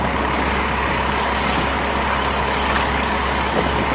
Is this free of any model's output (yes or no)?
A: no